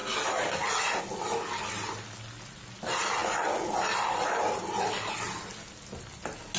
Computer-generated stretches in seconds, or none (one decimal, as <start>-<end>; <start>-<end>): none